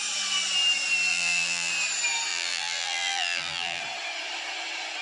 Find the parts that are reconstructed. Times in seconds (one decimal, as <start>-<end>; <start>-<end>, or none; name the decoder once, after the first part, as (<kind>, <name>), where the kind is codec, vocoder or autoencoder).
1.1-1.7 (vocoder, BigVGAN v2); 2.3-3.8